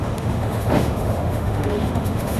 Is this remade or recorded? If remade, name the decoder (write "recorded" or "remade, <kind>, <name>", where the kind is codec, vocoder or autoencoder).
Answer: remade, autoencoder, DAC-VAE